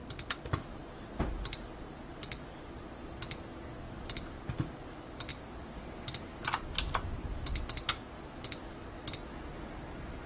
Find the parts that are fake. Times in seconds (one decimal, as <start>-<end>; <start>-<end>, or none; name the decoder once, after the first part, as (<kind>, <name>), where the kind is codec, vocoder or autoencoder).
none